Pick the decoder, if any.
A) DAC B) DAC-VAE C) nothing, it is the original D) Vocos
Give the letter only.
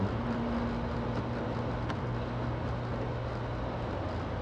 C